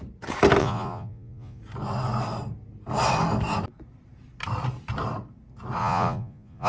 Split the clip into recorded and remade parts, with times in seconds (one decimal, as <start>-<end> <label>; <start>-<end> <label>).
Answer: 0.0-0.6 recorded; 0.6-1.6 remade; 1.6-5.8 recorded; 5.8-6.7 remade